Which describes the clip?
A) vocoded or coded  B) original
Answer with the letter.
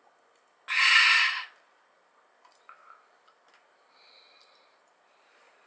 B